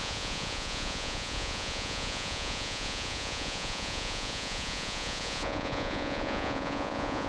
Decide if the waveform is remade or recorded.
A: remade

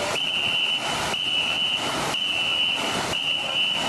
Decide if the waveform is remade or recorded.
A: recorded